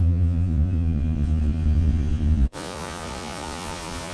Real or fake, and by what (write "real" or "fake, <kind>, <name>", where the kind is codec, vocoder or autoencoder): fake, vocoder, Vocos